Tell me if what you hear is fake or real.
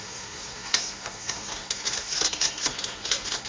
fake